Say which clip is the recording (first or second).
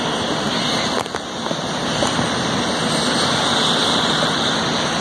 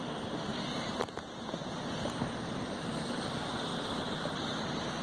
first